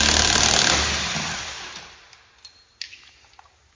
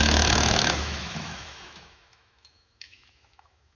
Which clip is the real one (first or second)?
first